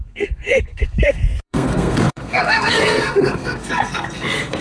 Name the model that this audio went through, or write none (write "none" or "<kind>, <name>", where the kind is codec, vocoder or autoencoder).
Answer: codec, SNAC